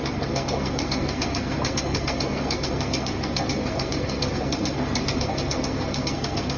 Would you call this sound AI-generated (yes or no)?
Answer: yes